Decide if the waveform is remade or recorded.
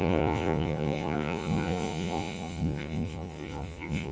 remade